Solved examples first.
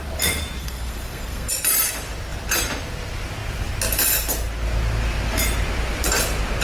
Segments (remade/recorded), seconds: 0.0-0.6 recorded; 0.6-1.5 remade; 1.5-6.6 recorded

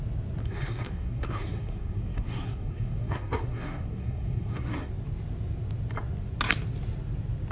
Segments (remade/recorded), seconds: 0.0-0.4 recorded; 0.4-4.9 remade; 4.9-7.5 recorded

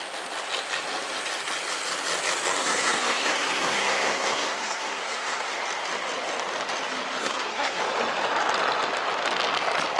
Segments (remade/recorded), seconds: 0.0-2.6 recorded; 2.6-5.6 remade; 5.6-7.2 recorded; 7.2-7.8 remade; 7.8-10.0 recorded

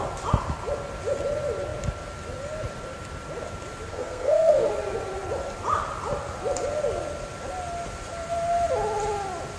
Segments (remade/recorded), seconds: 0.0-3.9 recorded; 3.9-4.7 remade; 4.7-9.6 recorded

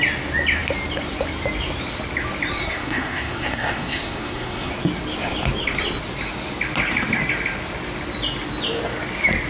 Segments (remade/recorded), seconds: 0.0-2.6 recorded; 2.6-4.7 remade; 4.7-9.5 recorded

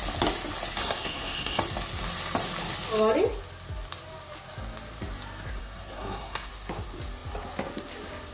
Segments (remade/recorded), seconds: 0.0-0.8 recorded; 0.8-1.6 remade; 1.6-5.6 recorded; 5.6-6.5 remade; 6.5-8.3 recorded

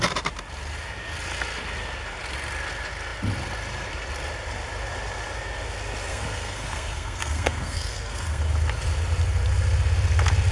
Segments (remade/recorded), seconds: 0.0-6.1 recorded; 6.1-8.4 remade; 8.4-10.5 recorded

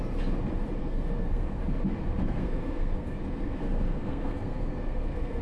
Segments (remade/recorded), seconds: 0.0-0.8 recorded; 0.8-1.6 remade; 1.6-2.2 recorded; 2.2-5.4 remade